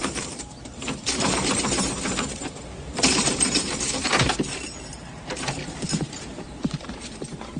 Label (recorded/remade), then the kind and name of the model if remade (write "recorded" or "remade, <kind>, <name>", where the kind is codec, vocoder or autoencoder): remade, vocoder, BigVGAN v2